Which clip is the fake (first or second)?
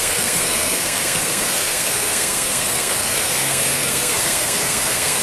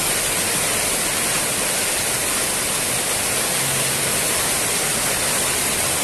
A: first